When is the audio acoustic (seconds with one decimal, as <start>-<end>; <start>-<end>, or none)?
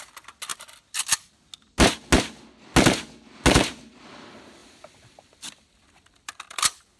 0.0-4.6